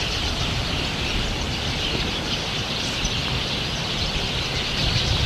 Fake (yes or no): no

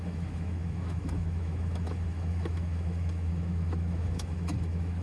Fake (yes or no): yes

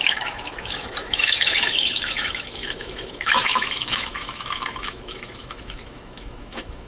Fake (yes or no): yes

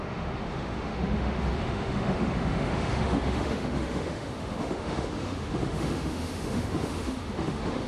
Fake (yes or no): yes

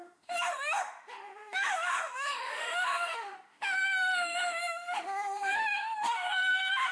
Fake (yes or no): yes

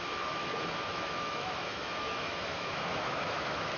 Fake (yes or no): yes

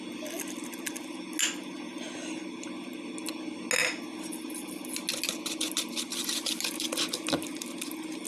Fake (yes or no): no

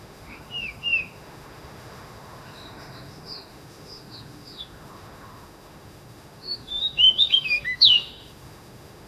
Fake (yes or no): yes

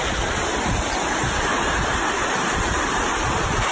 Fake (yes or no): no